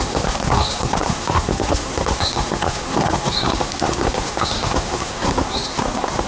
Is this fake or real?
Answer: fake